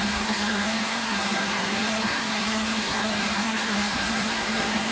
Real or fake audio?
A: fake